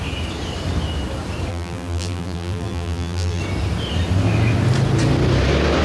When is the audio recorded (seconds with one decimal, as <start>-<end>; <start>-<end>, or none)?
0.0-1.5; 3.4-5.8